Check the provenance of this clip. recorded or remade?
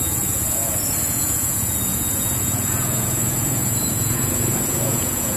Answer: remade